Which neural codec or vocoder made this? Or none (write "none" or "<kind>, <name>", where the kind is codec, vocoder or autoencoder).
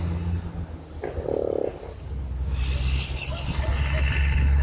none